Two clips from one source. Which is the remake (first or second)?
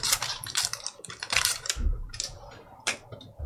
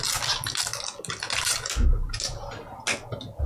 first